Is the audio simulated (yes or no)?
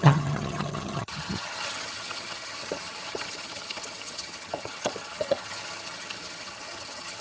yes